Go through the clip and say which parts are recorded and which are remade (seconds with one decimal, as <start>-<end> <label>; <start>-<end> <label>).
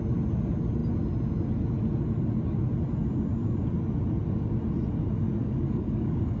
0.0-5.4 recorded; 5.4-6.4 remade